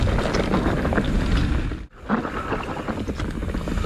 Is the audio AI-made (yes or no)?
no